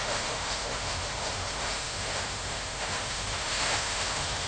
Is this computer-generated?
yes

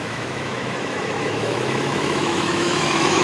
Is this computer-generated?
yes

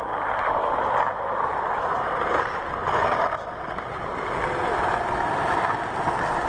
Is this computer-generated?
no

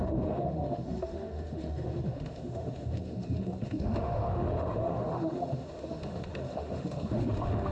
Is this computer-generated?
yes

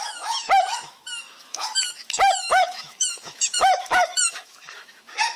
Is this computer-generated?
yes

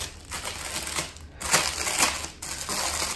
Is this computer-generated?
no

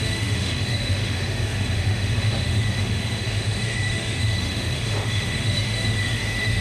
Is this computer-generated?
yes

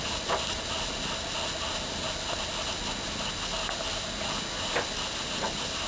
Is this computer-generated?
no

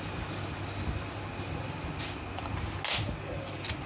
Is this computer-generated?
no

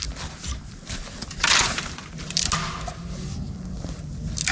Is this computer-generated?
no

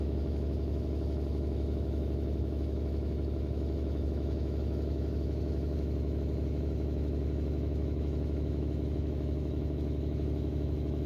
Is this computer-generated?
yes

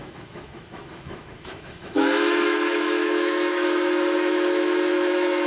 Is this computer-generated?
yes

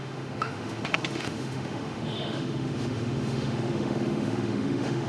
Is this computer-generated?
yes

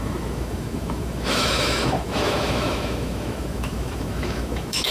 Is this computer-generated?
yes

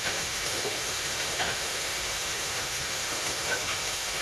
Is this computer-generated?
yes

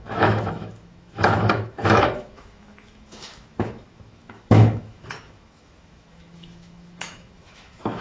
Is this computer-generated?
yes